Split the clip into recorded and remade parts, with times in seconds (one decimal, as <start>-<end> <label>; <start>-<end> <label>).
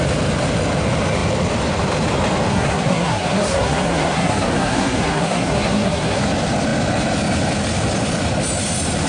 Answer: 0.0-2.5 recorded; 2.5-6.2 remade; 6.2-9.1 recorded